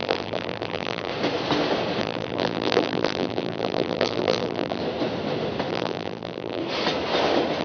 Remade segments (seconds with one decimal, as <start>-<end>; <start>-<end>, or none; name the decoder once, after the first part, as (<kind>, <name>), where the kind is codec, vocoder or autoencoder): 0.0-1.1 (vocoder, BigVGAN v2); 2.0-4.8; 5.7-6.6